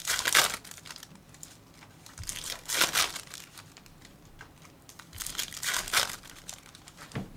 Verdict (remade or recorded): remade